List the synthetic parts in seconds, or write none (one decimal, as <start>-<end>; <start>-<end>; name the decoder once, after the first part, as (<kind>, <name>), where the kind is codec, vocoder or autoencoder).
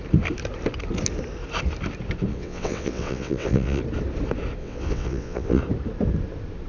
2.3-3.8 (vocoder, WaveNeXt); 4.6-5.6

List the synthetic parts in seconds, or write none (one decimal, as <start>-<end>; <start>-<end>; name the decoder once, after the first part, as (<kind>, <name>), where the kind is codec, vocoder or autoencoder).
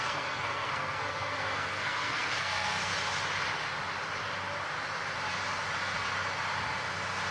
0.0-2.9 (codec, SNAC)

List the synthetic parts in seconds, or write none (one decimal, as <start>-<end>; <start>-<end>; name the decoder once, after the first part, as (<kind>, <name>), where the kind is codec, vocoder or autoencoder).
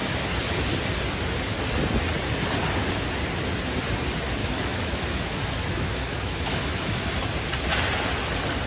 4.4-7.0 (autoencoder, DAC-VAE)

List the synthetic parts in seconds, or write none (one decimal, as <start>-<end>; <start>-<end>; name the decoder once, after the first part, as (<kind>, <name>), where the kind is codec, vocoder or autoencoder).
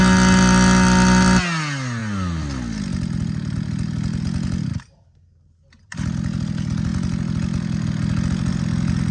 none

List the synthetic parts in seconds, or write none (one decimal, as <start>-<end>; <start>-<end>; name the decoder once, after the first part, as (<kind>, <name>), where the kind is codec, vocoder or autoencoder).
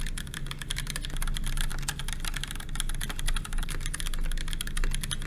none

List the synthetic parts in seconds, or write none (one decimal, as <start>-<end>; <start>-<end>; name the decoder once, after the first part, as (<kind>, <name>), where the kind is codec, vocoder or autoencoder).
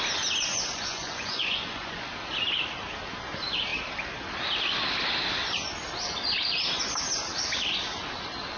0.5-2.1 (vocoder, Vocos)